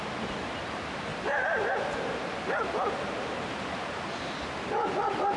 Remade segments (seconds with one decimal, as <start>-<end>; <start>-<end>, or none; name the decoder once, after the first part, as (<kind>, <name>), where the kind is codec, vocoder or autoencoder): 1.1-4.1 (vocoder, BigVGAN v2)